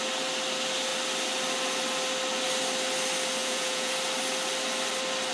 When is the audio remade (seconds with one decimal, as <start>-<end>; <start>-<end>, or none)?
3.4-3.9